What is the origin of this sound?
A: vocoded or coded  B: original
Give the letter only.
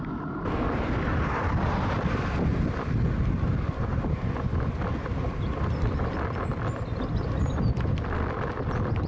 B